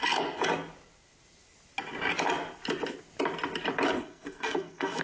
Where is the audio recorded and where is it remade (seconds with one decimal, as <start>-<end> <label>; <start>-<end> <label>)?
0.0-4.0 recorded; 4.0-5.0 remade